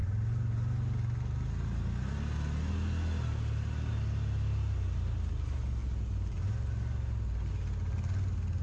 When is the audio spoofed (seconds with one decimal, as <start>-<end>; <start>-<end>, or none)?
none